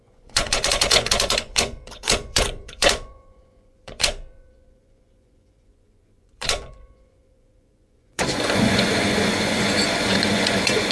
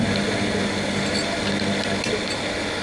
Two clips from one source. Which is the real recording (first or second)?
second